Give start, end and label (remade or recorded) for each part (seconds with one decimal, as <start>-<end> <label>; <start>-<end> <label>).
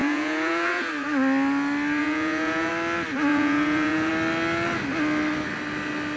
0.0-0.9 remade; 0.9-2.0 recorded; 2.0-2.7 remade; 2.7-3.3 recorded; 3.3-4.1 remade; 4.1-6.2 recorded